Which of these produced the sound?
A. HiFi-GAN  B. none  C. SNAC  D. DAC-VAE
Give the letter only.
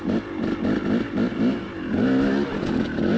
B